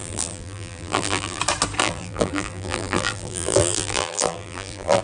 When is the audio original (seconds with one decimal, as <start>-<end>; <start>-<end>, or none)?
1.4-1.8